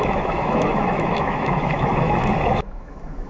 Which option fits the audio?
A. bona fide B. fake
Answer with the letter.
B